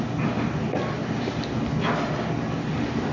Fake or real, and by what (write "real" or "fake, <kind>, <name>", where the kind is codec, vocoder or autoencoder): real